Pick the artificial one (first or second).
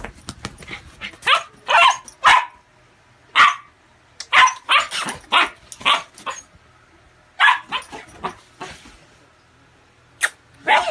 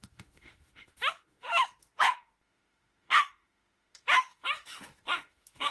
second